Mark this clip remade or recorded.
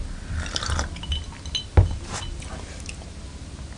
recorded